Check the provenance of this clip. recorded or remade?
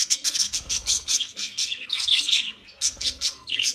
remade